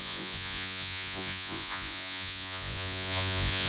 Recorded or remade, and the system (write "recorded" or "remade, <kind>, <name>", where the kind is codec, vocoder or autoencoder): remade, vocoder, Vocos